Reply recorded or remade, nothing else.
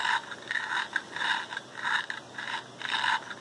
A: recorded